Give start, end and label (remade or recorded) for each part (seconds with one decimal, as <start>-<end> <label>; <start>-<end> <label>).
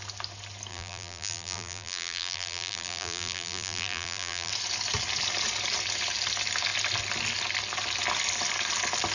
0.0-0.7 recorded; 0.7-4.5 remade; 4.5-9.1 recorded